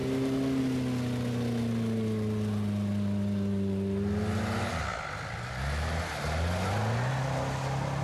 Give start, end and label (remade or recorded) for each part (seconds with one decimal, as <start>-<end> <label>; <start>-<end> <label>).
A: 0.0-8.0 recorded